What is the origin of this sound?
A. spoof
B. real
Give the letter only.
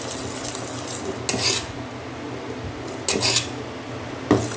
B